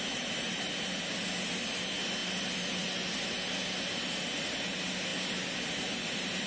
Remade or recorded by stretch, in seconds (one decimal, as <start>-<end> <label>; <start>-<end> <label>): 0.0-6.5 recorded